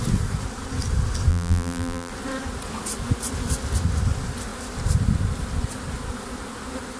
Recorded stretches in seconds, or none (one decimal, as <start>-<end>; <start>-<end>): 0.0-1.3; 2.1-7.0